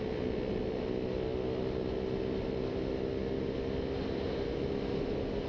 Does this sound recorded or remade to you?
recorded